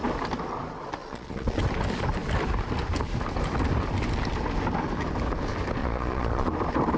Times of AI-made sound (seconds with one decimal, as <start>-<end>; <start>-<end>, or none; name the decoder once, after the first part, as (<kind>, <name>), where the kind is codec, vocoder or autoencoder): 1.0-1.6 (vocoder, Vocos); 5.8-6.5